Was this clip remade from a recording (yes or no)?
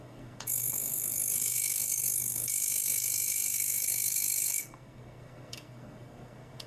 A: yes